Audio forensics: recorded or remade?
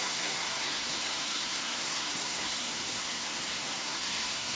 remade